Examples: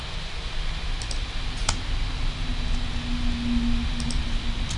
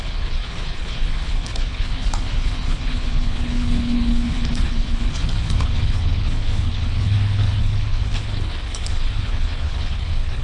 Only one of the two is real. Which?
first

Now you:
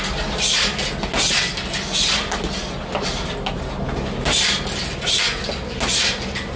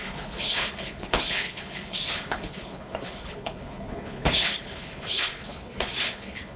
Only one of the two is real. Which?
first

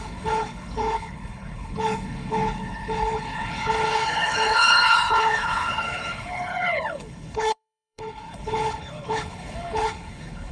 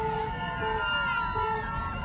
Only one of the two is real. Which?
second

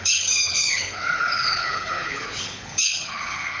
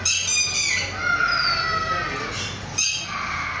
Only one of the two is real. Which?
second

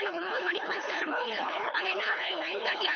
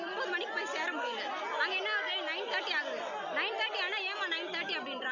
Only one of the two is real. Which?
second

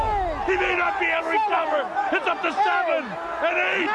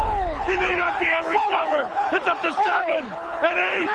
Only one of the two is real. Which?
first